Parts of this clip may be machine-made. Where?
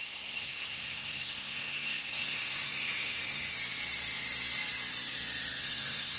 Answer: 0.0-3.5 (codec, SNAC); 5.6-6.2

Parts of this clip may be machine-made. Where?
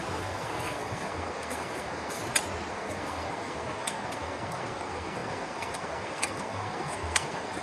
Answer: 0.0-2.2 (codec, SNAC); 2.7-7.6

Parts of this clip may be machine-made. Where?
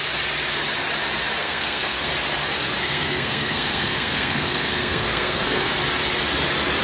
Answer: 1.4-2.1 (codec, SNAC); 2.8-5.7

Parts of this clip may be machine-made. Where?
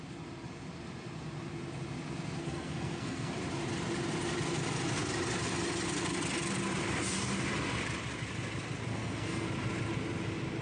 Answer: 2.4-3.3 (codec, SNAC); 8.9-9.5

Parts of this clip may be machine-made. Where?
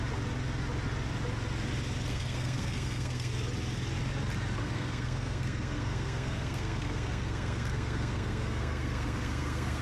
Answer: 2.1-3.3 (codec, SNAC); 4.6-9.8